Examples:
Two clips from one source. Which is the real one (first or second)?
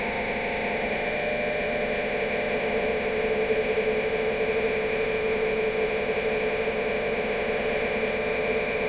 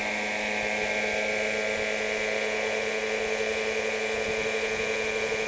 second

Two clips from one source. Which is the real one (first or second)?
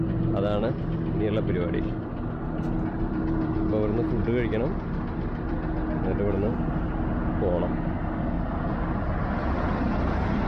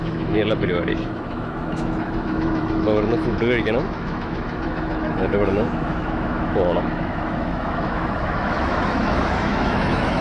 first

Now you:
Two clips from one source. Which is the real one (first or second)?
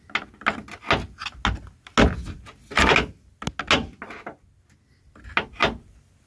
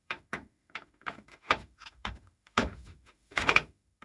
first